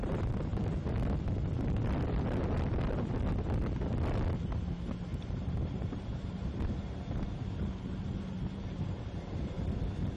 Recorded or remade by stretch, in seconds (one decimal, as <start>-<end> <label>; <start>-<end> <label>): 0.0-5.1 recorded; 5.1-9.4 remade; 9.4-10.2 recorded